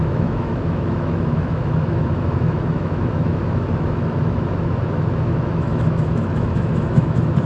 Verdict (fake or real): fake